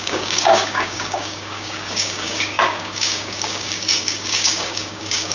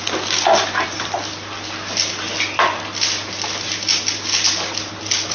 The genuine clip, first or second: second